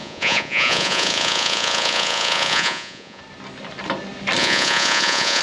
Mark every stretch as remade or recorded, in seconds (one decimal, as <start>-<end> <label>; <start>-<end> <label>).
0.0-3.2 remade; 3.2-4.4 recorded; 4.4-5.4 remade